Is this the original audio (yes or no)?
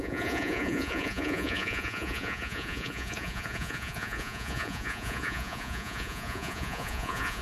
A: no